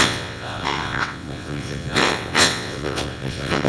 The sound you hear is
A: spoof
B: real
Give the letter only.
A